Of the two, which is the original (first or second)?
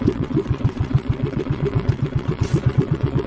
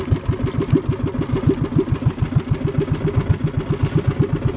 second